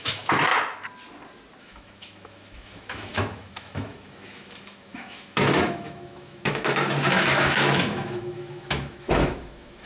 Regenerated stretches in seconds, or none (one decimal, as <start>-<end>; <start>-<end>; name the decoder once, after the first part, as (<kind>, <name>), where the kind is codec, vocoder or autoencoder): 0.0-0.5 (autoencoder, DAC-VAE); 1.6-9.9